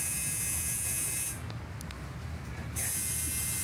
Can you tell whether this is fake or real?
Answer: real